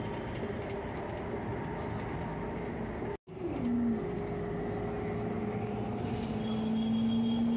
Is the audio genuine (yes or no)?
yes